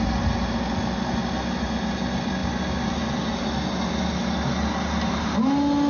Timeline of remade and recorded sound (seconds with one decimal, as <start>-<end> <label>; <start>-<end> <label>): 0.0-5.9 recorded